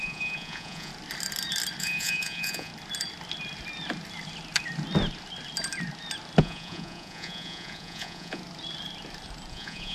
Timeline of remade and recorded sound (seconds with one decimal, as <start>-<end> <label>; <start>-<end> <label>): 0.0-0.9 remade; 0.9-1.8 recorded; 1.8-2.7 remade; 2.7-6.4 recorded; 6.4-8.4 remade; 8.4-9.5 recorded; 9.5-9.9 remade